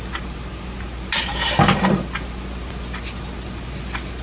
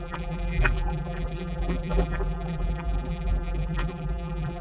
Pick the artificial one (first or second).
second